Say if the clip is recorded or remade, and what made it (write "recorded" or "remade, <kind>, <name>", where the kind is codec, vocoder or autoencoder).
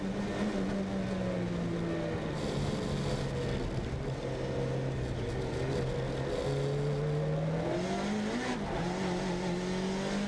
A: recorded